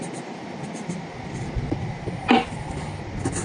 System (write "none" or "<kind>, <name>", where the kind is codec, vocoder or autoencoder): none